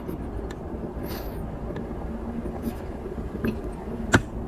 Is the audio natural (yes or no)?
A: yes